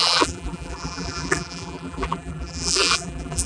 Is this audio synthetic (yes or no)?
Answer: yes